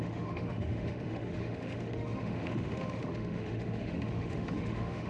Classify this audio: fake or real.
fake